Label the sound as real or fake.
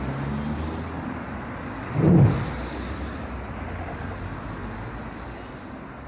real